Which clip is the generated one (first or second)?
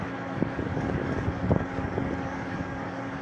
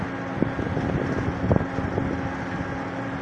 first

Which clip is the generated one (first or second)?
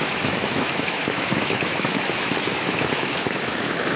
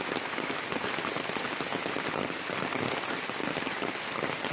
first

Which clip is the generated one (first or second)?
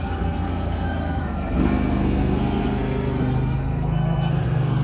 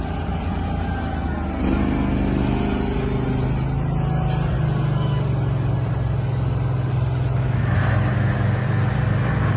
first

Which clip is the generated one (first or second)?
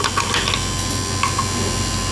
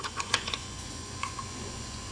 second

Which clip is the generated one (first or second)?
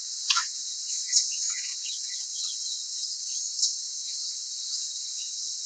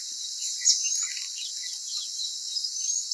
first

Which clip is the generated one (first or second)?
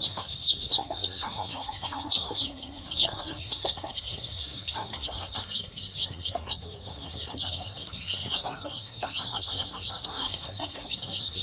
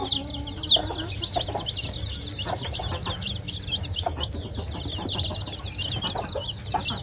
first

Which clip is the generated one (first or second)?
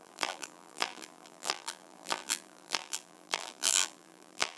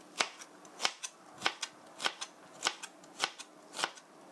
first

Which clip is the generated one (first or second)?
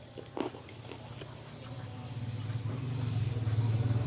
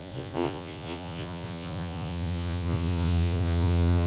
second